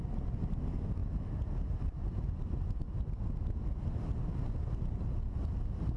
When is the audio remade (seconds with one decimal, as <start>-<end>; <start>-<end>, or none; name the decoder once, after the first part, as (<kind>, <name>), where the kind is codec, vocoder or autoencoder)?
none